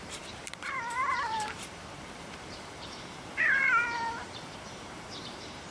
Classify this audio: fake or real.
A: fake